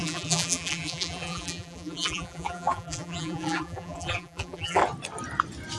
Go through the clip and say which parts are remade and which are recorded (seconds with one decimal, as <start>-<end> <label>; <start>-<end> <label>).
0.0-4.8 remade; 4.8-5.8 recorded